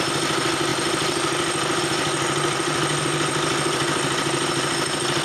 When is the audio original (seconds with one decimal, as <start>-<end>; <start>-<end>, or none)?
0.0-5.2